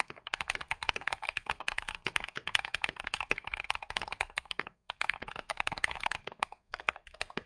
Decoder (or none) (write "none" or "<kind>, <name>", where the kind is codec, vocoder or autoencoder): codec, SNAC